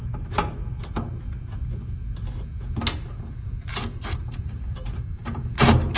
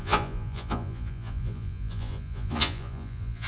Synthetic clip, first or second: second